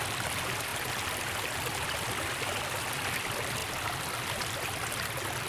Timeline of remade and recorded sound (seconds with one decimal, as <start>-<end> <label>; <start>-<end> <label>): 0.0-5.5 recorded